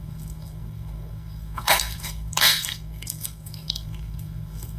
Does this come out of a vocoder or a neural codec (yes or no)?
yes